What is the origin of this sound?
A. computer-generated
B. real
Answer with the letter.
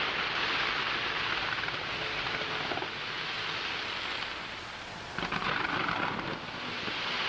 B